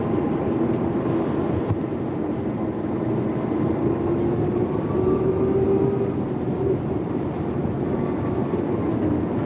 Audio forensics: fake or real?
real